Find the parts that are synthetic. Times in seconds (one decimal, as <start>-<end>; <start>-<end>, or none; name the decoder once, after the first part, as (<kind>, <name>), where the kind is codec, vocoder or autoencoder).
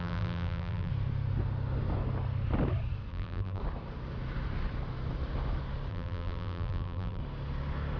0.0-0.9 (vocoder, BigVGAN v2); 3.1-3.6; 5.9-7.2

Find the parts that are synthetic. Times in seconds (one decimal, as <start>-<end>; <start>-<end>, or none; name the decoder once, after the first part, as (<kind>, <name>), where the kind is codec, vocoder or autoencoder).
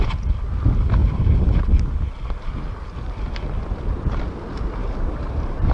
1.0-1.6 (vocoder, BigVGAN v2); 4.8-5.7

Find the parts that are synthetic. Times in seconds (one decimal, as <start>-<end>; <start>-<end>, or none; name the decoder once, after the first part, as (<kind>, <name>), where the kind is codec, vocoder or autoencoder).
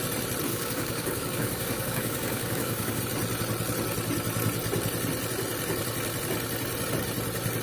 0.5-3.0 (codec, DAC)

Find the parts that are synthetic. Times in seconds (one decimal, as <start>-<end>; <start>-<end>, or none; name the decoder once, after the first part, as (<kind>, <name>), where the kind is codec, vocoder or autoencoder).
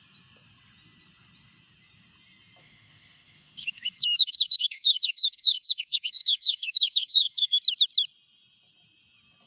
2.6-7.6 (autoencoder, DAC-VAE)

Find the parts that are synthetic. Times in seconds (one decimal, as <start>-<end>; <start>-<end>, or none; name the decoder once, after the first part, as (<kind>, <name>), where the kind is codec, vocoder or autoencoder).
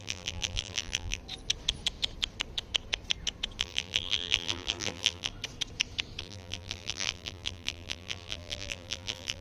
0.0-1.2 (vocoder, BigVGAN v2); 3.6-5.3; 6.2-9.4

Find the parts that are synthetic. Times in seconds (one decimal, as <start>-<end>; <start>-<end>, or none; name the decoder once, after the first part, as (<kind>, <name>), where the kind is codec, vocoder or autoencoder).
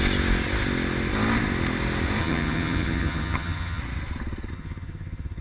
2.2-3.8 (vocoder, HiFi-GAN); 4.5-5.4